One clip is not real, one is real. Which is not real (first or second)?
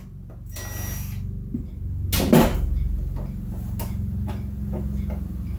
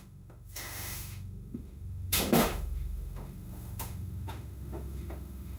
second